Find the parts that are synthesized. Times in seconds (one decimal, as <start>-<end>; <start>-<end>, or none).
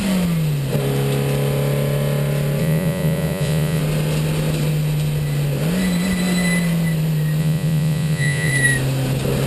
2.6-3.8; 7.4-8.5